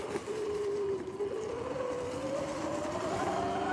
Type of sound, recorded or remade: recorded